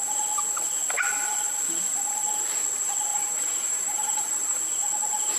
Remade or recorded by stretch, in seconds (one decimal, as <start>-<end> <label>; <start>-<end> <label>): 0.0-3.1 recorded; 3.1-4.6 remade; 4.6-5.4 recorded